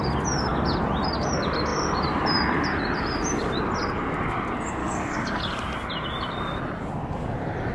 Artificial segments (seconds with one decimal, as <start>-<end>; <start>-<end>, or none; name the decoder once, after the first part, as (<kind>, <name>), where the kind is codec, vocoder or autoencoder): 4.8-5.4 (codec, DAC)